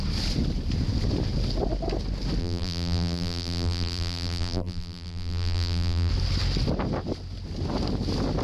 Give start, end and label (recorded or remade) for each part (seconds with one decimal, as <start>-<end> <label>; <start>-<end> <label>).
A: 0.0-2.4 recorded; 2.4-6.1 remade; 6.1-8.4 recorded